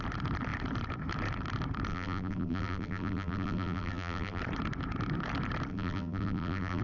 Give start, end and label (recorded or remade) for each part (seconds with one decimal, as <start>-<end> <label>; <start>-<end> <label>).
0.0-1.9 recorded; 1.9-4.4 remade; 4.4-5.7 recorded; 5.7-6.8 remade